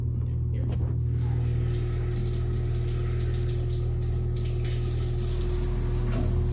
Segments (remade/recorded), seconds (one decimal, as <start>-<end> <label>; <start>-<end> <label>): 0.0-6.5 recorded